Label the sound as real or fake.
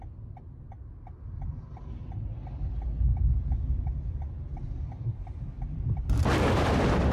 real